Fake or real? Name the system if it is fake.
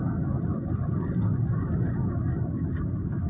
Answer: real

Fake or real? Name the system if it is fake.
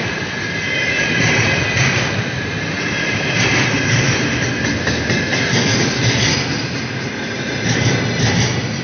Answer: real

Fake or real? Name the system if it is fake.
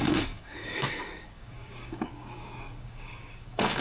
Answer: fake, codec, DAC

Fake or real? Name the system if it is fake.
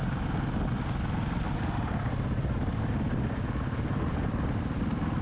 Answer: real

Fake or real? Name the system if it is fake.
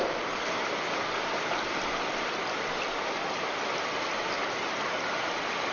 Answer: real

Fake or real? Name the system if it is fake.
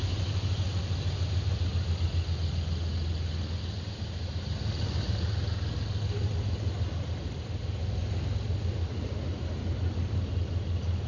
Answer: real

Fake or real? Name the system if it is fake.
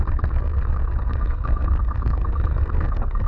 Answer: fake, codec, SNAC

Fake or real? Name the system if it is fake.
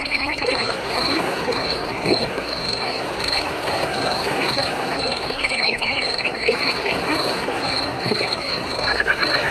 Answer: fake, codec, SNAC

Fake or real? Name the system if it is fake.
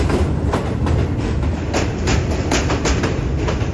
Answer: fake, vocoder, BigVGAN v2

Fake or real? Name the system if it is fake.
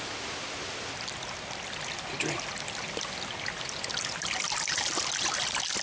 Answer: real